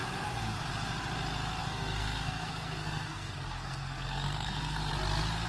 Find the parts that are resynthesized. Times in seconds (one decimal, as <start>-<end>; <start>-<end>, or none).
1.6-4.9